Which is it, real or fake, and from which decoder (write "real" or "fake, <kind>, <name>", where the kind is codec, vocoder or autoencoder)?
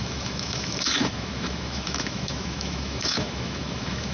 fake, autoencoder, DAC-VAE